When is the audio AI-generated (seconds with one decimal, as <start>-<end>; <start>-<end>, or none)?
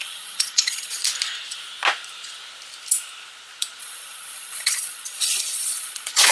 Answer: 0.0-1.0; 3.8-6.3